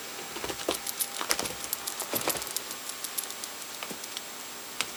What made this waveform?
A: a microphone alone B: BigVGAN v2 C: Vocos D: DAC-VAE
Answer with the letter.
A